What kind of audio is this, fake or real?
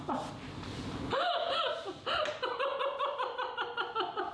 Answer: real